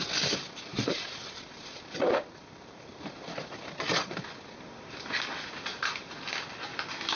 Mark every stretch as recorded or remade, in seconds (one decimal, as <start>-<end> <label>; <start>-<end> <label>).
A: 0.0-0.7 recorded; 0.7-3.8 remade; 3.8-5.7 recorded; 5.7-6.2 remade; 6.2-7.2 recorded